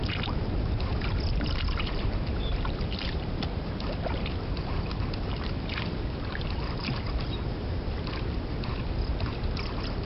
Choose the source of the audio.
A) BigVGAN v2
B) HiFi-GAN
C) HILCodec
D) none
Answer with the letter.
D